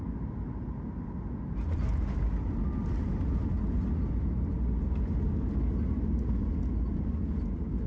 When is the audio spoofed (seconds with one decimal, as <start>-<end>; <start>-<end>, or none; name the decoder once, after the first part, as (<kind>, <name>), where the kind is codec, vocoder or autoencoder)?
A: none